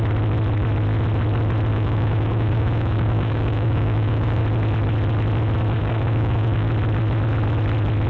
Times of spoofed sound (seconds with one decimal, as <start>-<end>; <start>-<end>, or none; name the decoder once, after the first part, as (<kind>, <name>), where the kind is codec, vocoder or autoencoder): 1.7-4.4 (codec, DAC); 5.8-6.7

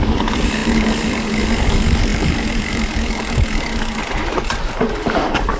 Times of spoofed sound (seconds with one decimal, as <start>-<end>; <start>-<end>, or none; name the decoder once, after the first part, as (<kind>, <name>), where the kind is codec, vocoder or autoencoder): 0.0-4.0 (codec, DAC); 4.6-5.6